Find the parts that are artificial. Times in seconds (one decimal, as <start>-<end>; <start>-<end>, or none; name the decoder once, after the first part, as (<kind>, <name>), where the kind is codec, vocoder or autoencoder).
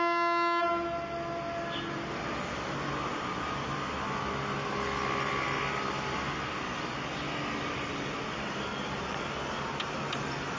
none